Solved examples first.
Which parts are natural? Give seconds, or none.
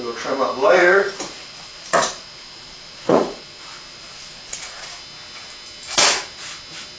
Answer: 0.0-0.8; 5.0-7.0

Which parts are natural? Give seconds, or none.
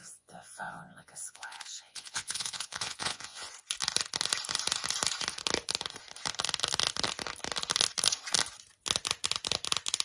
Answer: 3.5-10.0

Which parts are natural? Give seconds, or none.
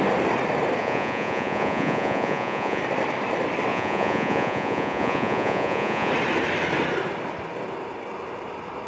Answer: 0.0-0.8; 2.8-3.7; 6.1-8.9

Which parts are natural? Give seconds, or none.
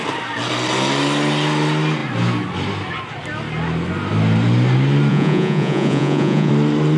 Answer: 0.0-5.1; 6.5-7.0